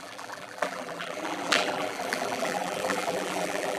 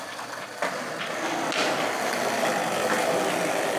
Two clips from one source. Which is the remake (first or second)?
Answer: first